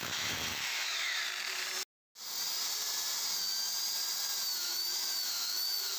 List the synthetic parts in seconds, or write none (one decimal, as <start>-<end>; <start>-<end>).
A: 0.0-1.2; 4.6-6.0